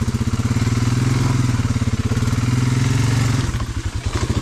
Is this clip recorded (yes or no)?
yes